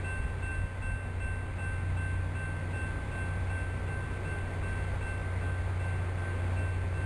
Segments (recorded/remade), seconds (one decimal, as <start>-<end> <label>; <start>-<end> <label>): 0.0-7.1 recorded